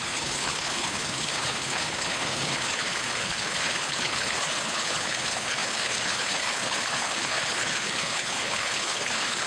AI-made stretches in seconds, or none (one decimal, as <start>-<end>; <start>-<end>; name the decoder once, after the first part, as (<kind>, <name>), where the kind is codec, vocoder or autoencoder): 0.0-9.5 (codec, HILCodec)